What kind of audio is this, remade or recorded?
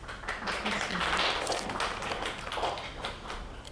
recorded